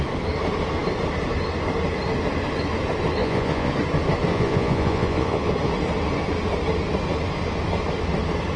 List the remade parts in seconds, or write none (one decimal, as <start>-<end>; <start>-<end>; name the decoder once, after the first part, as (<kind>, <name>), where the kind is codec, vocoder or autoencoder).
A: 3.2-3.7 (vocoder, Vocos); 4.3-5.5